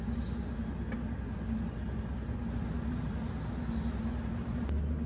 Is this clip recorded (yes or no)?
yes